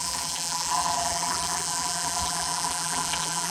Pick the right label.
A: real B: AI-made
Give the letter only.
B